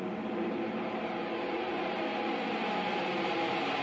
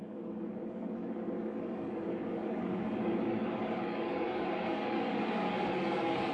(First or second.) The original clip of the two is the first